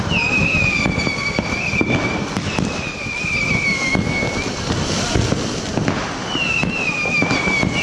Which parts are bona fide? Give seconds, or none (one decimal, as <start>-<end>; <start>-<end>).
0.0-7.8